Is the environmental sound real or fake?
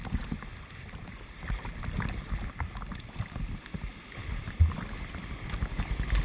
real